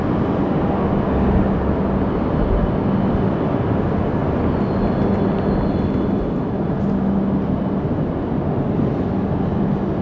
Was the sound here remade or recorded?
recorded